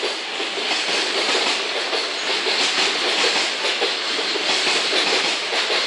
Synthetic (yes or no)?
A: no